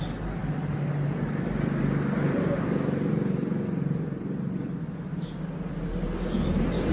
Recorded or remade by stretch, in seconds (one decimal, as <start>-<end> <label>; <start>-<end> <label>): 0.0-6.9 recorded